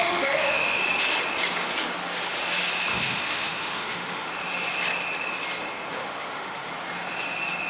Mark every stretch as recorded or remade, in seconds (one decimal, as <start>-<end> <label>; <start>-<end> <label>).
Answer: 0.0-0.8 remade; 0.8-2.9 recorded; 2.9-4.3 remade; 4.3-6.0 recorded; 6.0-6.7 remade; 6.7-7.7 recorded